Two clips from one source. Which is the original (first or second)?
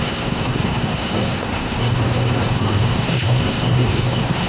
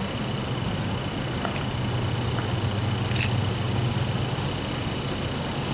second